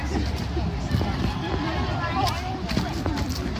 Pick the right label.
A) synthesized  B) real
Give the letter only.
B